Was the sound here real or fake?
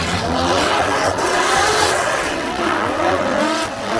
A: fake